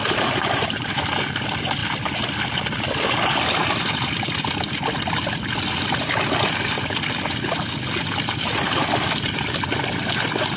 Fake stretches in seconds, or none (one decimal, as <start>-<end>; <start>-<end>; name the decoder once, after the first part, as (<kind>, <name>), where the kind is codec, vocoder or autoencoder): 0.0-1.0 (vocoder, BigVGAN v2)